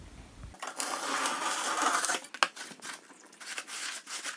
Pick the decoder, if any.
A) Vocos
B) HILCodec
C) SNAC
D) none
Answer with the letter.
D